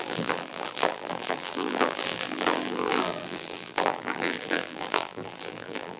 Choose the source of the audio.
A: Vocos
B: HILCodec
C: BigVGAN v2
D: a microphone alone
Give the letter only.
C